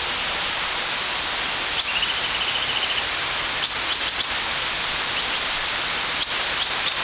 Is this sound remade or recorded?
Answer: recorded